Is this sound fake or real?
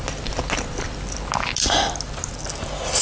real